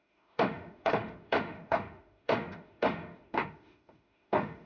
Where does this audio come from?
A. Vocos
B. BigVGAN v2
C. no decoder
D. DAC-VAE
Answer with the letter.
D